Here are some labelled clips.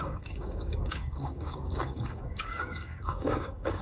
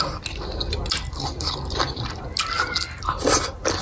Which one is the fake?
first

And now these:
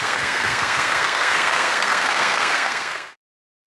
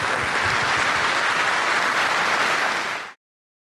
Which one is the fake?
first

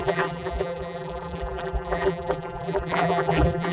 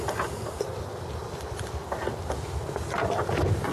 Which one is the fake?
first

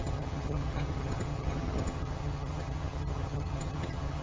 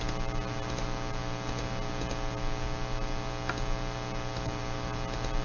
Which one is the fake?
first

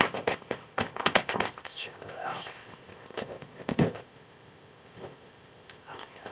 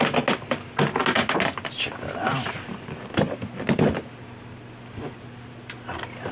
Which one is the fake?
first